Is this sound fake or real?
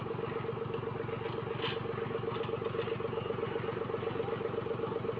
real